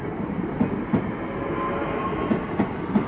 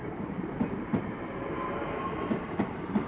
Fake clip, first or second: second